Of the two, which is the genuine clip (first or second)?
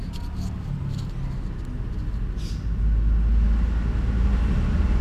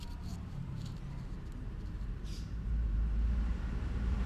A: first